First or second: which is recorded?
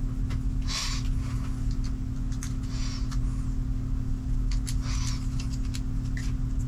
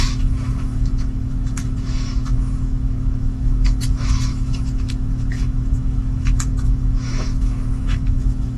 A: first